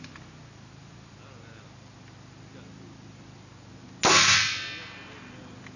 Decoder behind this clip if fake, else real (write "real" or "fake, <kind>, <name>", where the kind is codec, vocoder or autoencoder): real